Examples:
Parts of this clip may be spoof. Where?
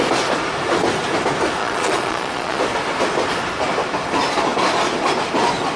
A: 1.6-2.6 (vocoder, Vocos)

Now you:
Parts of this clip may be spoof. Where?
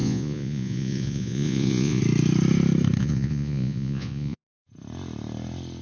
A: 0.0-2.0 (vocoder, Vocos); 3.0-4.5